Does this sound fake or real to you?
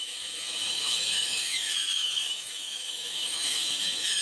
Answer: fake